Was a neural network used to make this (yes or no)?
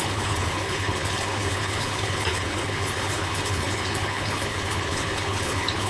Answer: yes